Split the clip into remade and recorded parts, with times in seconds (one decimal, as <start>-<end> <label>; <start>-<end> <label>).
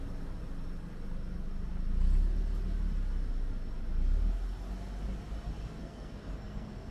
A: 0.0-5.6 recorded; 5.6-6.9 remade